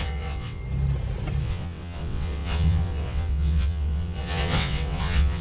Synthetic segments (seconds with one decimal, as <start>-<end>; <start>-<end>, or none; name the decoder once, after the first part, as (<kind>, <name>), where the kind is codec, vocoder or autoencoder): 0.0-0.6 (vocoder, WaveNeXt); 1.4-5.4